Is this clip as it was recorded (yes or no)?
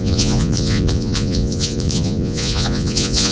no